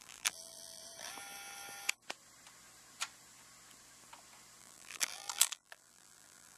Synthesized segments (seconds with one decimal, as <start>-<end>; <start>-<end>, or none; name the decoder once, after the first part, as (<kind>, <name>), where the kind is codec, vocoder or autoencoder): 0.0-0.8 (vocoder, BigVGAN v2); 4.6-6.6